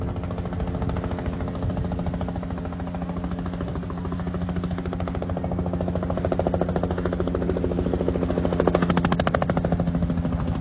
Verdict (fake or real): real